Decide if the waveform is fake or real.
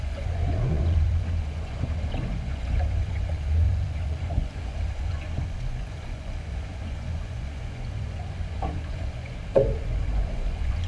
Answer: fake